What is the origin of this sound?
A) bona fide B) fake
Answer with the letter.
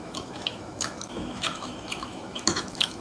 B